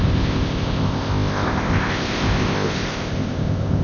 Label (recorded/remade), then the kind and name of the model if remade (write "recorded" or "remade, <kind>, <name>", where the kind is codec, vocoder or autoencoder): remade, codec, ZipCodec